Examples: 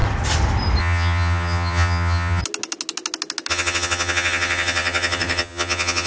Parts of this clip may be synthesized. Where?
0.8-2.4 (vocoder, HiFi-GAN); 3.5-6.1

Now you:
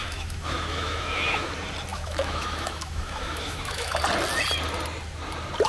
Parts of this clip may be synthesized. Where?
0.0-1.5 (autoencoder, DAC-VAE); 1.9-4.0

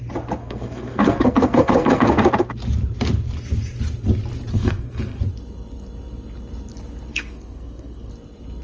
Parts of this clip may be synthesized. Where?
0.4-2.3 (codec, SNAC); 4.5-5.2; 7.1-8.1

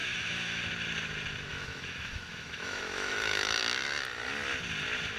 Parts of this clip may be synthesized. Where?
0.0-0.6 (autoencoder, DAC-VAE); 1.5-3.6

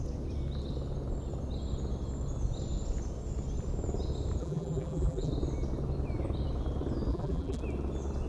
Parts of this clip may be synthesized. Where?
4.4-5.3 (vocoder, BigVGAN v2); 7.1-7.6

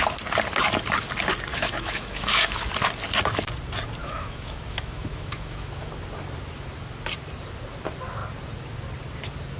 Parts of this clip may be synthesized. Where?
1.5-2.7 (autoencoder, DAC-VAE); 4.0-5.9

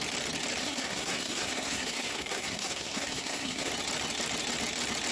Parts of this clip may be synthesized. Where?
0.6-3.7 (codec, SNAC)